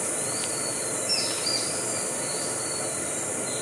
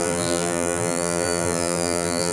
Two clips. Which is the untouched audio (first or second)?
first